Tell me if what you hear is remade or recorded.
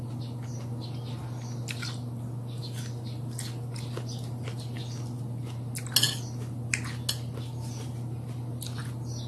recorded